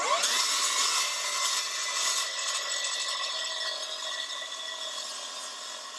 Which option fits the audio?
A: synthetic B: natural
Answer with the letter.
B